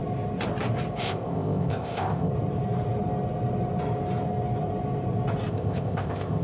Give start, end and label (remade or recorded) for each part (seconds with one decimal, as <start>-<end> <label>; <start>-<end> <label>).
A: 0.0-1.0 recorded; 1.0-2.3 remade; 2.3-5.5 recorded; 5.5-6.4 remade